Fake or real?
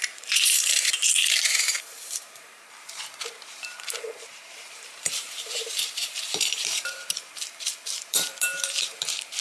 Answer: fake